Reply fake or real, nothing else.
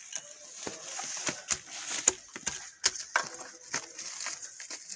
real